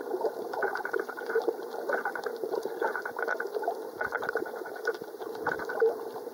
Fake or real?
fake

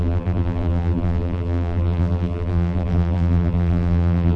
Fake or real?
fake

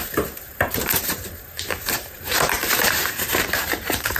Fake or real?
fake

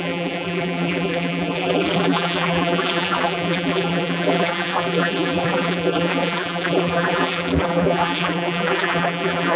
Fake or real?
fake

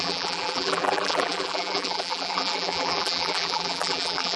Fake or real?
fake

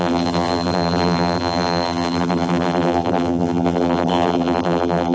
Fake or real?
fake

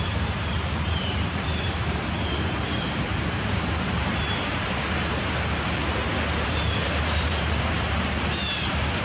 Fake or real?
fake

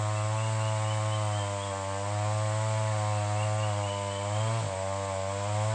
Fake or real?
real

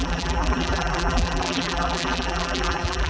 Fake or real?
fake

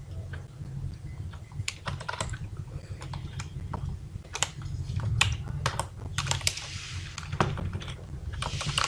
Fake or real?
fake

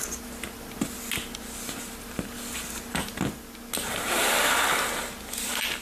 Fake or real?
real